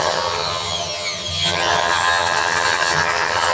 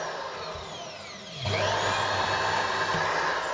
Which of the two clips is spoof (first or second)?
first